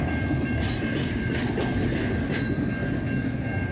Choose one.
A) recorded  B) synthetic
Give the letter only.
A